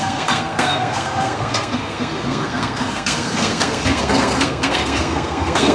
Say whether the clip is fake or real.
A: fake